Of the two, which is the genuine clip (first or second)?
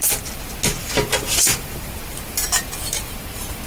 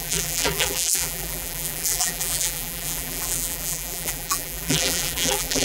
first